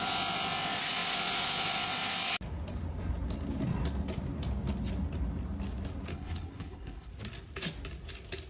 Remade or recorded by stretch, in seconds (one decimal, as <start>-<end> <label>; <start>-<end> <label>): 0.0-6.1 recorded; 6.1-7.1 remade; 7.1-8.5 recorded